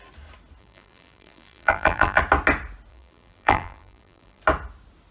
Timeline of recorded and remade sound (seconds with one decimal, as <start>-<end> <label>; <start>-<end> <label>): 0.0-0.6 recorded; 0.6-2.2 remade; 2.2-2.9 recorded; 2.9-4.4 remade; 4.4-5.1 recorded